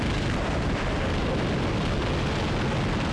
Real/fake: real